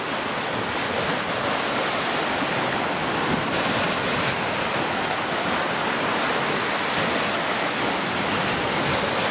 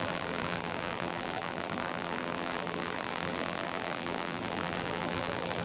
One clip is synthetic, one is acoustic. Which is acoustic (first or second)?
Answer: first